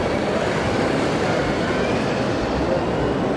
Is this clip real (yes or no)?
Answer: yes